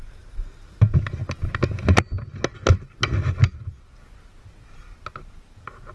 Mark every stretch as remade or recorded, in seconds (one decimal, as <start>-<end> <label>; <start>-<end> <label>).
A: 0.0-5.9 recorded